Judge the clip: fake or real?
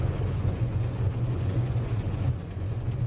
fake